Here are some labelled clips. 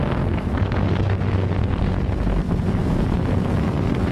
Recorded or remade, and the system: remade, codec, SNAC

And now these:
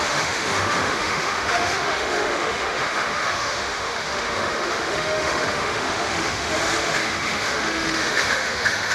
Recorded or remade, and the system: remade, autoencoder, DAC-VAE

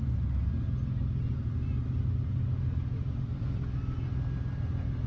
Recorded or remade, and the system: recorded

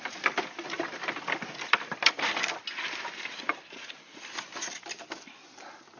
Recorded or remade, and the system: recorded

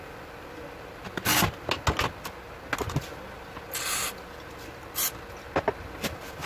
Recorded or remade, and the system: recorded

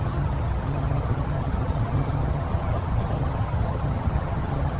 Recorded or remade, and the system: remade, vocoder, HiFi-GAN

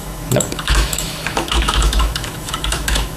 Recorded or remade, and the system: remade, autoencoder, DAC-VAE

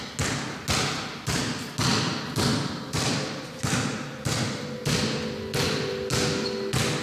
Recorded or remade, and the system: recorded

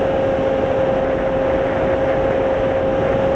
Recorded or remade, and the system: recorded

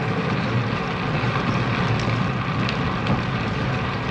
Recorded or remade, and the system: recorded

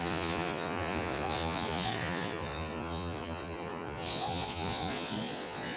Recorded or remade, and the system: remade, vocoder, Vocos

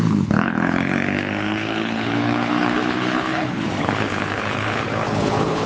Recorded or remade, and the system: remade, codec, HILCodec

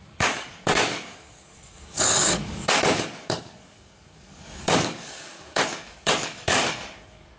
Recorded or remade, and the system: remade, codec, DAC